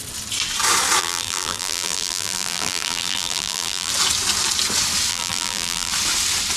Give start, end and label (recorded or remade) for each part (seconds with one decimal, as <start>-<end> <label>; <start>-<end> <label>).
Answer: 0.0-1.0 recorded; 1.0-3.9 remade; 3.9-5.1 recorded; 5.1-5.9 remade; 5.9-6.6 recorded